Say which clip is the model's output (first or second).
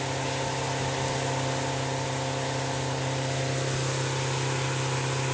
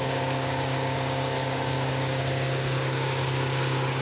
second